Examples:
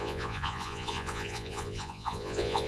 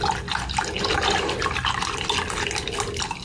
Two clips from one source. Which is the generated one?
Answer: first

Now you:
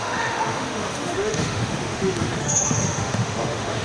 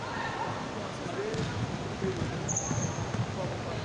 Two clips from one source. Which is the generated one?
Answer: first